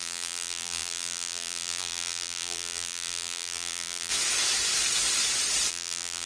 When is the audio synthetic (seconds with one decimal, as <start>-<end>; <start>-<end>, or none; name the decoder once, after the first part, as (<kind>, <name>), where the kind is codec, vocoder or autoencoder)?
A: 0.0-4.1 (vocoder, BigVGAN v2); 5.7-6.3